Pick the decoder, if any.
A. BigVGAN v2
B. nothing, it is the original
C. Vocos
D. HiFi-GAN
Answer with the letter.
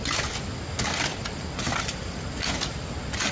B